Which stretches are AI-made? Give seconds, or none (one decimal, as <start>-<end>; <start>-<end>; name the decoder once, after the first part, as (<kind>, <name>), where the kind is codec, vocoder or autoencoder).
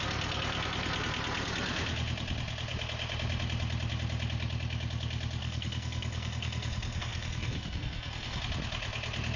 5.4-8.4 (codec, SNAC)